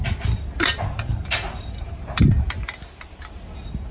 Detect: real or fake real